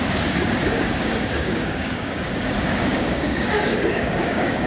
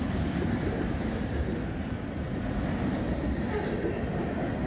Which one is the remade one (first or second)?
first